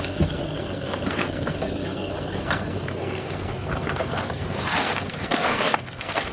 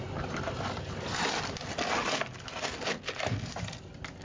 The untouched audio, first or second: second